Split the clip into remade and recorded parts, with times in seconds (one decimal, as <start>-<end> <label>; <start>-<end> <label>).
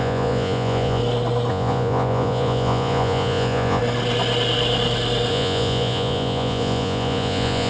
0.0-1.0 remade; 1.0-1.5 recorded; 1.5-3.8 remade; 3.8-5.3 recorded; 5.3-7.7 remade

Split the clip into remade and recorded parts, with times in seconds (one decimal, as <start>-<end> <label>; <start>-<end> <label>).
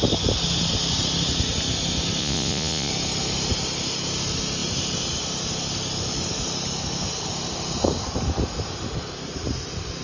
0.0-2.2 recorded; 2.2-2.9 remade; 2.9-10.0 recorded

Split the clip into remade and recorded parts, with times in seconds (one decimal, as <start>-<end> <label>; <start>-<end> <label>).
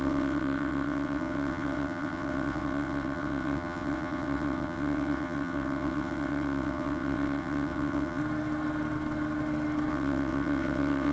0.0-8.2 remade; 8.2-9.9 recorded; 9.9-11.1 remade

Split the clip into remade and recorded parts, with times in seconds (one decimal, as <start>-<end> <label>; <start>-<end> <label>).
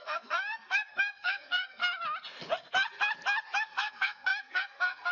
0.0-1.8 remade; 1.8-3.6 recorded; 3.6-5.1 remade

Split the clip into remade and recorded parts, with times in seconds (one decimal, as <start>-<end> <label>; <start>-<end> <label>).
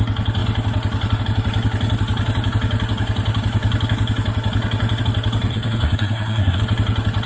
0.0-5.5 recorded; 5.5-6.6 remade; 6.6-7.3 recorded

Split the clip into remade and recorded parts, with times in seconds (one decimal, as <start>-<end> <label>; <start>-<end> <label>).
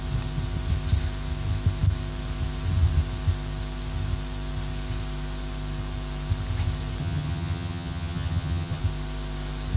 0.0-7.0 recorded; 7.0-8.8 remade; 8.8-9.8 recorded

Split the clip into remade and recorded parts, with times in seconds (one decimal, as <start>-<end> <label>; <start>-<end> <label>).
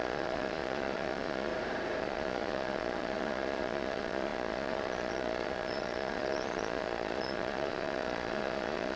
0.0-1.5 remade; 1.5-2.0 recorded; 2.0-9.0 remade